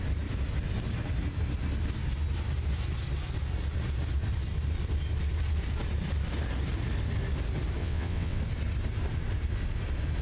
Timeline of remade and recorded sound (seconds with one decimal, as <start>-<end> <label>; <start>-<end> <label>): 0.0-7.8 recorded; 7.8-8.4 remade; 8.4-10.2 recorded